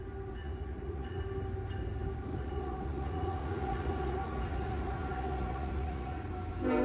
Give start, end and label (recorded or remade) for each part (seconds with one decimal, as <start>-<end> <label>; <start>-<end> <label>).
0.0-0.4 recorded; 0.4-1.2 remade; 1.2-2.3 recorded; 2.3-6.2 remade; 6.2-6.8 recorded